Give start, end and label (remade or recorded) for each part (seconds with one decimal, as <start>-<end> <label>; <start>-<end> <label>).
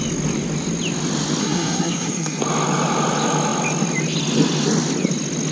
0.0-1.4 recorded; 1.4-2.4 remade; 2.4-5.5 recorded